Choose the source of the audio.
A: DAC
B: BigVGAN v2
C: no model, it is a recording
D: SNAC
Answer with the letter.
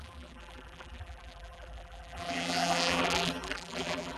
B